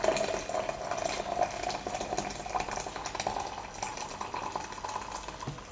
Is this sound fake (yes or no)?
no